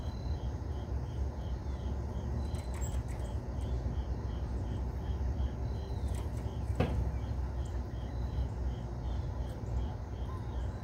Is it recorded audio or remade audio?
recorded